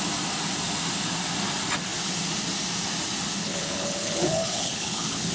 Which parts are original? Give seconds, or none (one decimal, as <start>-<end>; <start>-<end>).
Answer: 0.0-3.4